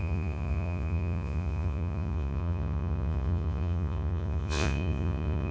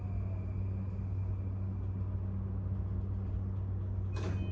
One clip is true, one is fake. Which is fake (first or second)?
first